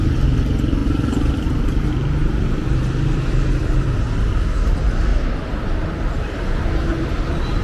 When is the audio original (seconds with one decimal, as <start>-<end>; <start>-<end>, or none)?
0.0-0.8; 1.6-5.1; 6.4-6.9